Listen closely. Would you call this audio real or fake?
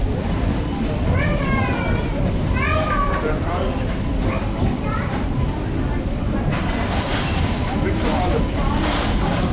fake